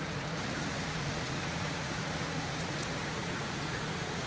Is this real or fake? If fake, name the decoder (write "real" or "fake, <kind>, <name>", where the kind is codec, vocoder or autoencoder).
fake, vocoder, Vocos